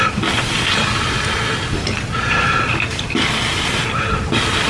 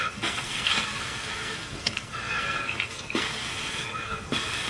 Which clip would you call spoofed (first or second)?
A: second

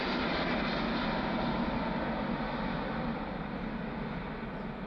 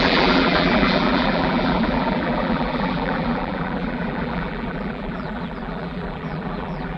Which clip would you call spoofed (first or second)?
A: second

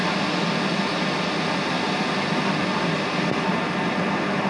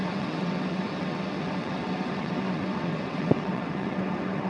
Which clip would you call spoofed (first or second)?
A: second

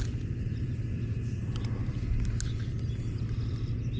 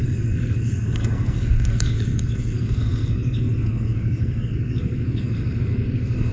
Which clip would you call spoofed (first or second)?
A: second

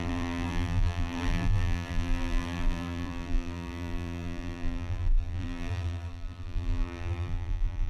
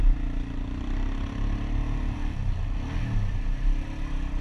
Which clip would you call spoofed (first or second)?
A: first